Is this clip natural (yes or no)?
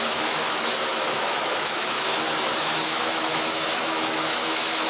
no